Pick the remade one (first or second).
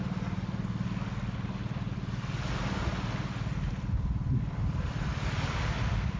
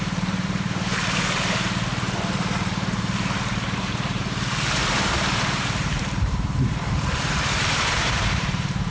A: second